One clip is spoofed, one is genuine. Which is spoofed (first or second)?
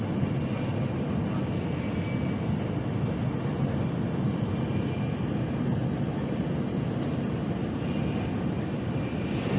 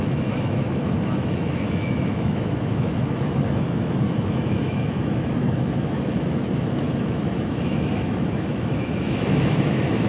second